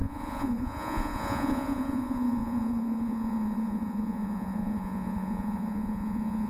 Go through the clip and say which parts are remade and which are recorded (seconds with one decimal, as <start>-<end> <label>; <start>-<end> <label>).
0.0-6.5 remade